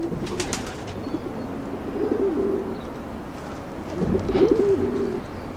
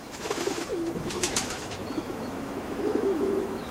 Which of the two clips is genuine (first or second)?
first